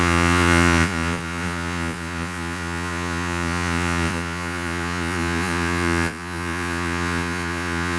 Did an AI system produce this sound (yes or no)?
yes